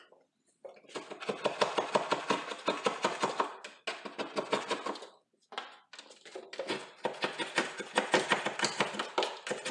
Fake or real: real